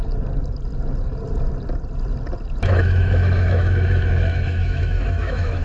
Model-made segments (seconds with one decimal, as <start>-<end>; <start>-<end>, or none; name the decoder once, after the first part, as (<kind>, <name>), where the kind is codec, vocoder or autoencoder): 2.6-5.6 (autoencoder, DAC-VAE)